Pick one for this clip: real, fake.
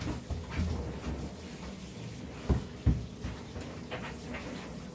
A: real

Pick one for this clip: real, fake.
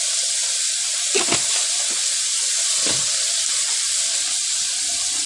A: real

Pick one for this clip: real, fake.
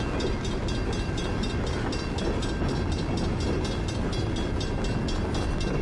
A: real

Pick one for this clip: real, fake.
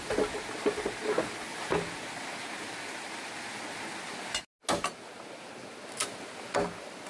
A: real